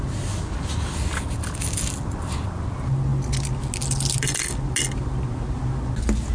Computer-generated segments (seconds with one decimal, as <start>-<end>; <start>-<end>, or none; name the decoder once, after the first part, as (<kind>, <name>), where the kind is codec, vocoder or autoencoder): none